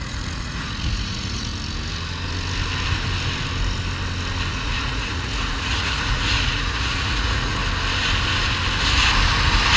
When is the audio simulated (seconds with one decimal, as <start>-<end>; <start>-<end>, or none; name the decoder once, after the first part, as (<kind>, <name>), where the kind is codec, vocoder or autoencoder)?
0.0-1.5 (vocoder, Vocos); 4.5-7.6